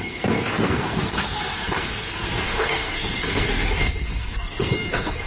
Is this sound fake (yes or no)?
yes